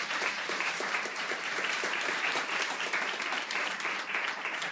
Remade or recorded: remade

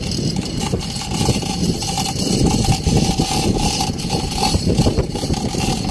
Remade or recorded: remade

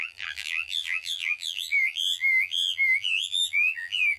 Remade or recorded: remade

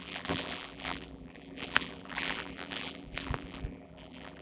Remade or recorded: remade